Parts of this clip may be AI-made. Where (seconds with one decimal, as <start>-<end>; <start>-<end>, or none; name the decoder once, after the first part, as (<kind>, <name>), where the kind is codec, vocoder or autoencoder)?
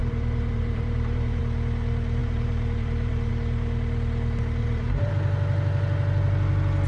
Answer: 0.0-1.4 (vocoder, BigVGAN v2); 2.2-3.3; 4.6-5.1